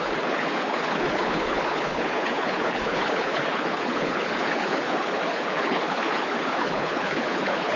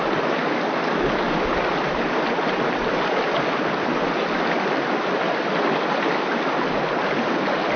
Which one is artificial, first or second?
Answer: first